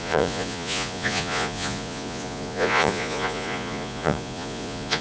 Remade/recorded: remade